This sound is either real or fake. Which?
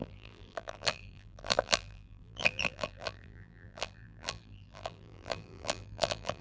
fake